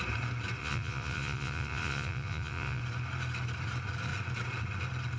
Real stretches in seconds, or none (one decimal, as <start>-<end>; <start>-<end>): 0.0-0.6; 2.8-5.2